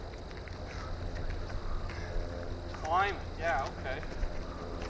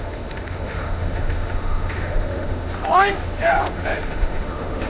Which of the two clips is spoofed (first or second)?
second